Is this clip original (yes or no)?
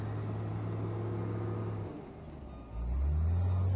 yes